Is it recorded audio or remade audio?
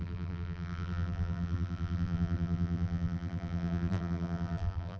remade